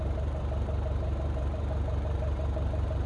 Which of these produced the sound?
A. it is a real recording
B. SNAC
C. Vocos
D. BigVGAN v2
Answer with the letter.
D